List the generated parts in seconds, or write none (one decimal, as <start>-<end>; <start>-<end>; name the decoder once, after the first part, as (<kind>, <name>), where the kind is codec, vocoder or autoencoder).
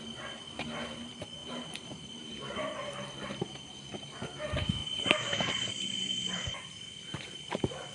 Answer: 1.4-2.9 (vocoder, BigVGAN v2); 4.8-7.5